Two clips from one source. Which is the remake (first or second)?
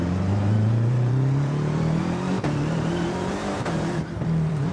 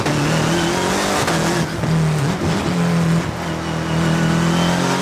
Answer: first